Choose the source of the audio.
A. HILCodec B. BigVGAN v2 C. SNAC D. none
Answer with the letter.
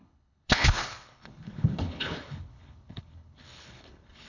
A